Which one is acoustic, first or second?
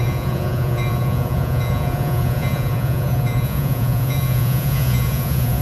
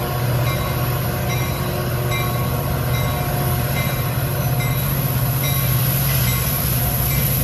second